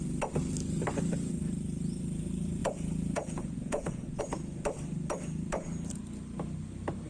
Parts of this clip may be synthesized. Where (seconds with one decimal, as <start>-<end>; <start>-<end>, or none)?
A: 2.6-4.2